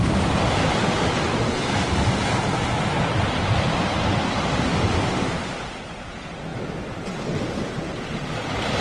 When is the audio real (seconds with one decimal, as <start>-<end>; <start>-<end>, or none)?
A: 0.0-8.8